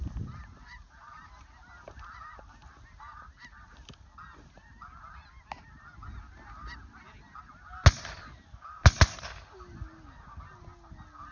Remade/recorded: recorded